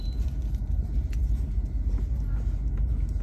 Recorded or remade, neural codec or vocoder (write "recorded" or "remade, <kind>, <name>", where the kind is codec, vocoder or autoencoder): recorded